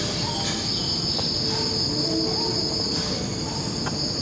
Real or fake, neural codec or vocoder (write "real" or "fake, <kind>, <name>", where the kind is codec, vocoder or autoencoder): real